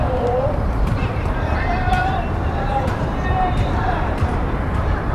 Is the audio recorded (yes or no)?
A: no